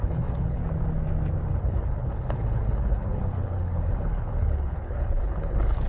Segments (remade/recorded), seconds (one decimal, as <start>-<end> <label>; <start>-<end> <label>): 0.0-0.6 remade; 0.6-1.5 recorded; 1.5-5.9 remade